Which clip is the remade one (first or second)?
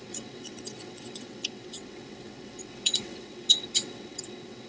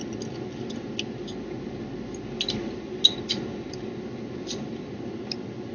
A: first